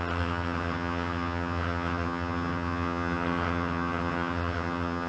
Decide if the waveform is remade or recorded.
remade